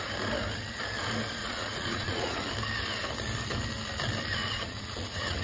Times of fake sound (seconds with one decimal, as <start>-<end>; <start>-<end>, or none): 1.4-2.5; 4.4-5.4